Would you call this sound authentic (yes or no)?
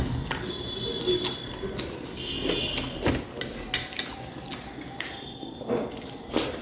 yes